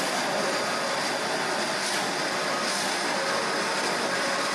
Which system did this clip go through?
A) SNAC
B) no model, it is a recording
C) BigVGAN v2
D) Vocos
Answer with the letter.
B